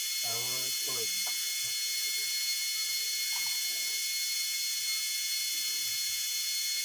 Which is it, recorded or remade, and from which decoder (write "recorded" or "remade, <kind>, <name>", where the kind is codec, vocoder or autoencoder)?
remade, vocoder, Vocos